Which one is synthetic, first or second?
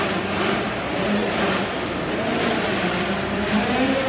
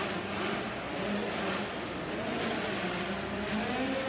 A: first